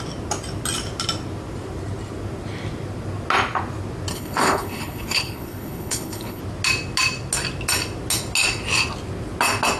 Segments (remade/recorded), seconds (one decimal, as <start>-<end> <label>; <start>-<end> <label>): 0.0-4.1 recorded; 4.1-6.4 remade; 6.4-9.8 recorded